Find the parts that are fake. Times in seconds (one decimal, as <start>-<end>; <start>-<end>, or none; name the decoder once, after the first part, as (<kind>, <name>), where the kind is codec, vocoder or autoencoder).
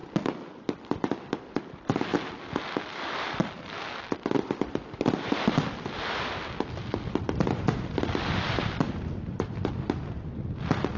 none